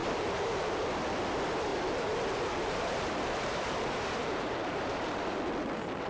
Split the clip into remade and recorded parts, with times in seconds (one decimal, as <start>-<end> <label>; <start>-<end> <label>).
0.0-0.7 remade; 0.7-1.7 recorded; 1.7-5.4 remade; 5.4-6.1 recorded

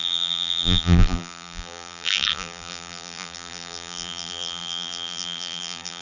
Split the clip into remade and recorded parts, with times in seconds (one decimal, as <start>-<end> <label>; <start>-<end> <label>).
0.0-6.0 remade